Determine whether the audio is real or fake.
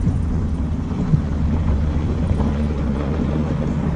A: fake